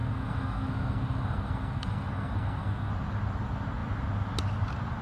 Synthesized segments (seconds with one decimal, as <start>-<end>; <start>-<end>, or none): 0.0-2.9